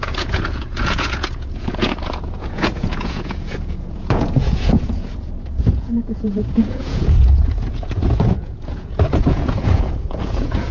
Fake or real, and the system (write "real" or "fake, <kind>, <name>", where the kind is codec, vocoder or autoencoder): fake, vocoder, Vocos